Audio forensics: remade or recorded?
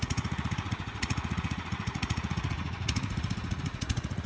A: remade